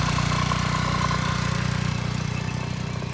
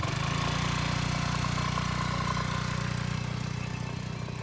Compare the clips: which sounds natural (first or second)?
second